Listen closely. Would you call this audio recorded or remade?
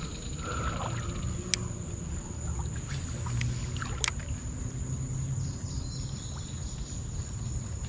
recorded